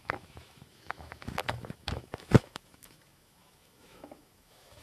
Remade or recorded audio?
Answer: remade